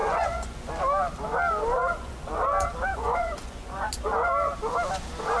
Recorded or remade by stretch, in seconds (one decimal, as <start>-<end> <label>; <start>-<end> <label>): 0.0-0.7 remade; 0.7-1.8 recorded; 1.8-2.3 remade; 2.3-2.9 recorded; 2.9-3.9 remade; 3.9-5.4 recorded